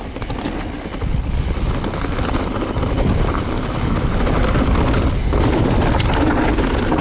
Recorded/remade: recorded